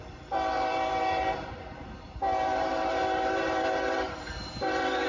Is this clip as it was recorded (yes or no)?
no